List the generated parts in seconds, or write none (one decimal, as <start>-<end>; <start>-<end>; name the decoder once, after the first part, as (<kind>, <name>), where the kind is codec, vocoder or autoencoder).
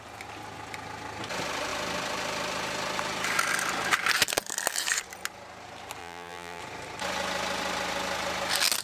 6.0-6.6 (vocoder, BigVGAN v2)